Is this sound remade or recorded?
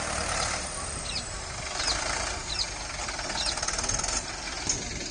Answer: recorded